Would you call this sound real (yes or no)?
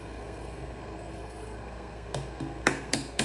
no